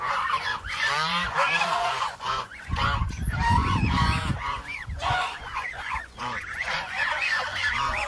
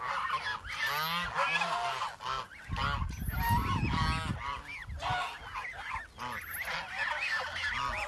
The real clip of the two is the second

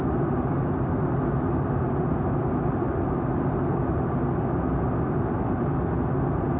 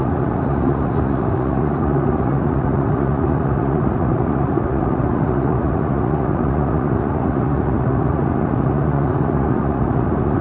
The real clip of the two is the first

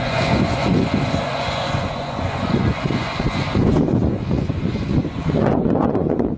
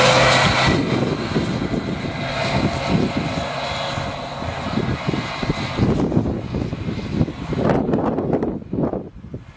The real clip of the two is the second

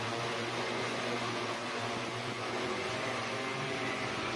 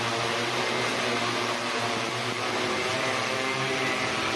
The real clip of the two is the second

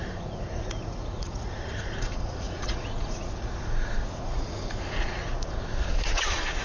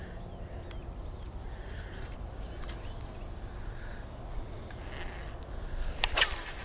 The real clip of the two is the second